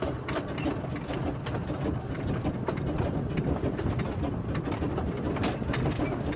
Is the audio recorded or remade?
recorded